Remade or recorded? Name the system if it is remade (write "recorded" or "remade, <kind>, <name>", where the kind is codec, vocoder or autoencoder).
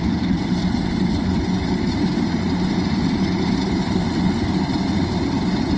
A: remade, vocoder, BigVGAN v2